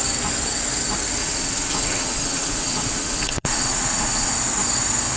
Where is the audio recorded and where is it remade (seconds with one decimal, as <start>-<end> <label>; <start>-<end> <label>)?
0.0-1.2 recorded; 1.2-4.3 remade; 4.3-5.2 recorded